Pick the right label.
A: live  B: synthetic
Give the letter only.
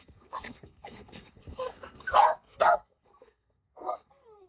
B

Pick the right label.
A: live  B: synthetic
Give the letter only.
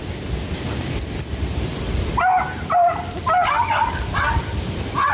A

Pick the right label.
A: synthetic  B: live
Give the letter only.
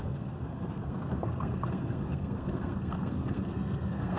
A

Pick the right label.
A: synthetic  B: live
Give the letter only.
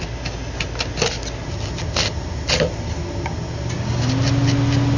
B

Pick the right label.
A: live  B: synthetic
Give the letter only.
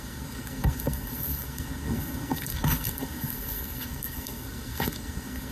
B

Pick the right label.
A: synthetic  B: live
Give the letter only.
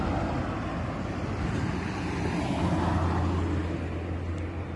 B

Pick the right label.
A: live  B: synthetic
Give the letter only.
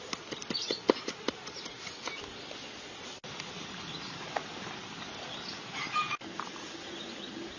A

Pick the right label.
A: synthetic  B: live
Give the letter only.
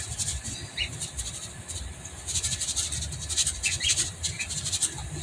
B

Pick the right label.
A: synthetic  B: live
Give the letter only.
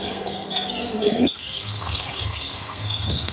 A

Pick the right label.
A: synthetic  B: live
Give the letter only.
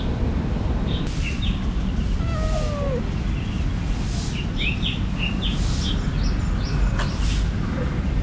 B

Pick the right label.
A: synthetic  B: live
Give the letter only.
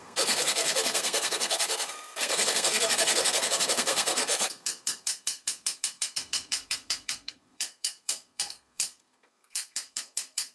A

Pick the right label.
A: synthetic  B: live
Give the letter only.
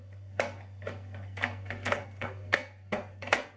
A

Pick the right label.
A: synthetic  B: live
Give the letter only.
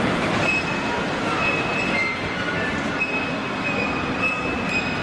B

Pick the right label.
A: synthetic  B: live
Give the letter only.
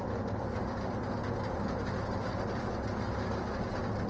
B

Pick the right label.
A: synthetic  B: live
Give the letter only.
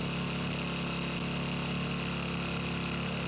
B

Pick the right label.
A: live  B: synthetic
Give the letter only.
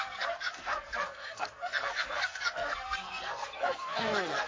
B